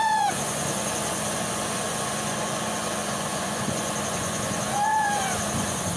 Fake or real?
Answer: fake